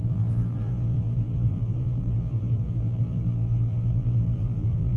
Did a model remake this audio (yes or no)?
yes